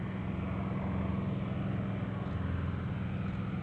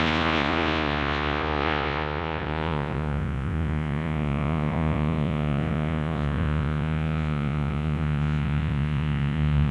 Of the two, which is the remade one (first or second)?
second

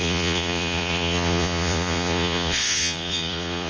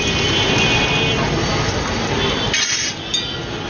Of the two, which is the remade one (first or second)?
first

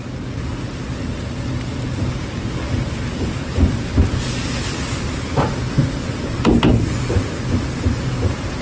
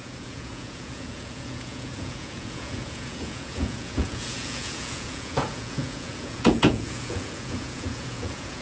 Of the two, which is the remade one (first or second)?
second